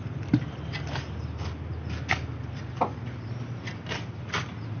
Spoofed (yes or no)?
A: no